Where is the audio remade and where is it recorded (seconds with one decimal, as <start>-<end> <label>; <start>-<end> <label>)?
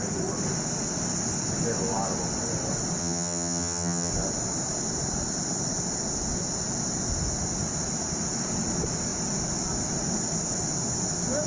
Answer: 0.0-3.0 recorded; 3.0-4.1 remade; 4.1-11.5 recorded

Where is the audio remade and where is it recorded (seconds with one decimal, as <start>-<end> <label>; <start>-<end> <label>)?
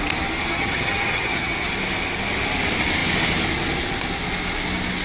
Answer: 0.0-0.5 recorded; 0.5-1.7 remade; 1.7-5.0 recorded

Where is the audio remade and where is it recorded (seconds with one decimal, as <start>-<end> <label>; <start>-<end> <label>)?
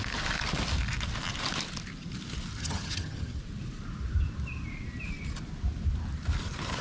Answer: 0.0-2.6 recorded; 2.6-3.4 remade; 3.4-6.8 recorded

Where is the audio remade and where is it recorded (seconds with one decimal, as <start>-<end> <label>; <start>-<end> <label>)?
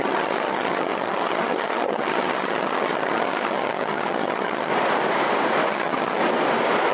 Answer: 0.0-4.7 remade; 4.7-5.7 recorded; 5.7-6.2 remade; 6.2-6.9 recorded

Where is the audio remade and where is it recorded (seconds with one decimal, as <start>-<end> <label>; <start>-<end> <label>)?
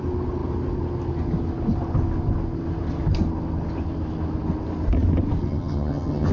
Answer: 0.0-5.4 recorded; 5.4-6.3 remade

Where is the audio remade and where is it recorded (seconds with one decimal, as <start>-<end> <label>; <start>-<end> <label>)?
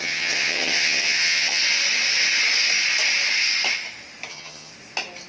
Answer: 0.0-1.6 remade; 1.6-4.3 recorded; 4.3-4.7 remade; 4.7-5.3 recorded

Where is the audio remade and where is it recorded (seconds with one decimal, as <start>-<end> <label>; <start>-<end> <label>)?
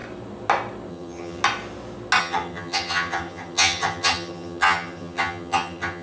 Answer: 0.0-0.9 recorded; 0.9-1.4 remade; 1.4-2.2 recorded; 2.2-6.0 remade